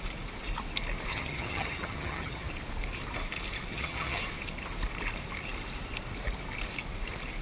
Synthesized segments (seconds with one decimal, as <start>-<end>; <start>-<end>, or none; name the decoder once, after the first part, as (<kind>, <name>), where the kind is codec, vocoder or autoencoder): 1.1-2.5 (vocoder, HiFi-GAN); 3.7-4.2